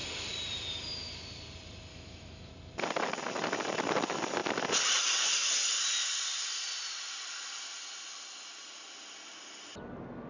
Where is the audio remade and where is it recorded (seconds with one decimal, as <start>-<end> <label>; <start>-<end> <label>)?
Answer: 0.0-1.9 recorded; 1.9-2.5 remade; 2.5-10.3 recorded